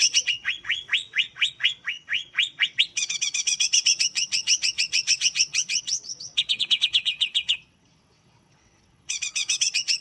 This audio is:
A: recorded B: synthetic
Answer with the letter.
B